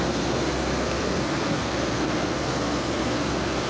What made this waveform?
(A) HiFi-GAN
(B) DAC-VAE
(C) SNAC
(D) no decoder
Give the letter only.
C